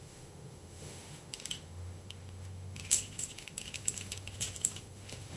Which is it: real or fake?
fake